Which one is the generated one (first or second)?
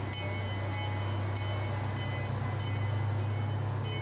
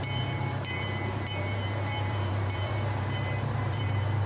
second